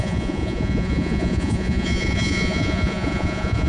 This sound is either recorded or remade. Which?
remade